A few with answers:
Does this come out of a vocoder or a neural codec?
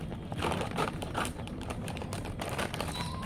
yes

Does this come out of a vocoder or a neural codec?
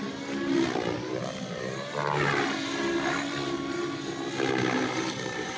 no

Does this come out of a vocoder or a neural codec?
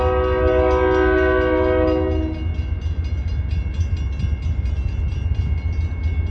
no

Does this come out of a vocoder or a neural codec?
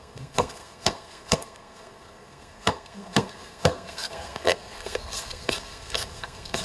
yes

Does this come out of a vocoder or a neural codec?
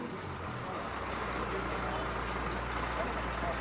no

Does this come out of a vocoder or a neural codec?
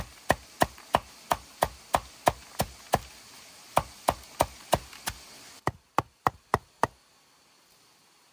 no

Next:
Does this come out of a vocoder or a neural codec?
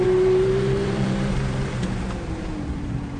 yes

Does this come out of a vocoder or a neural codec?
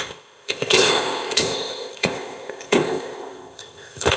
yes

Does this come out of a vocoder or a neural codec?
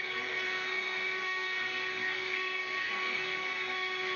yes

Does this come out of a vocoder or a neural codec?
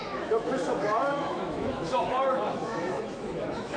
yes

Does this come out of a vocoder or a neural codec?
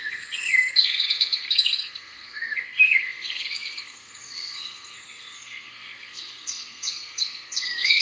yes